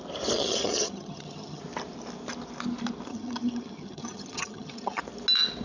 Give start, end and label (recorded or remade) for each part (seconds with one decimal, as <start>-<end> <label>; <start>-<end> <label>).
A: 0.0-0.4 recorded; 0.4-1.6 remade; 1.6-3.1 recorded; 3.1-5.0 remade; 5.0-5.6 recorded